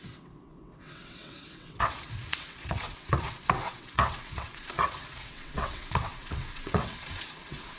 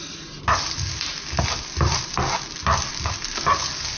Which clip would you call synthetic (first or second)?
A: first